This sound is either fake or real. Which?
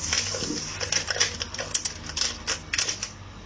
real